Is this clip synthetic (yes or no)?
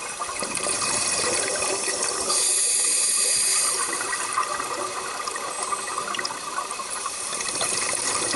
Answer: yes